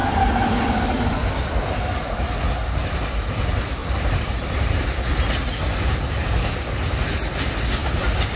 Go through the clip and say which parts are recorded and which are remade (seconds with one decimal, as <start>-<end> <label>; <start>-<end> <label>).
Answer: 0.0-2.1 remade; 2.1-3.8 recorded; 3.8-4.5 remade; 4.5-8.4 recorded